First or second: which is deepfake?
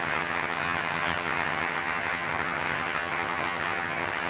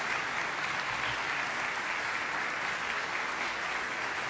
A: first